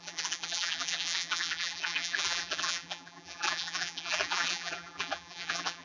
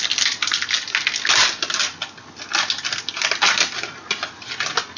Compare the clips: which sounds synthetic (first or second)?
first